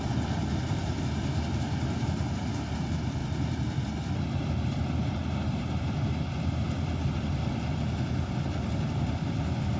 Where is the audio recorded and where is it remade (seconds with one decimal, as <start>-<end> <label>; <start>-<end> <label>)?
0.0-5.2 remade; 5.2-5.8 recorded; 5.8-9.8 remade